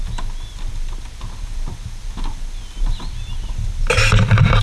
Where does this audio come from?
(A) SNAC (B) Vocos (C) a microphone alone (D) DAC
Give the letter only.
C